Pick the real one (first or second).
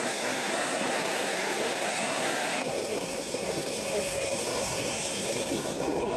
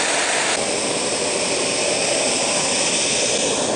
second